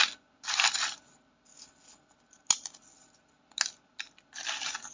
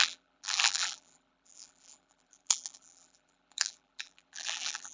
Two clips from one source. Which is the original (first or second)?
first